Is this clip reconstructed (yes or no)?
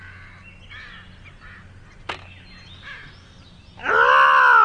no